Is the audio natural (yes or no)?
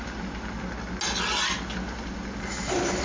yes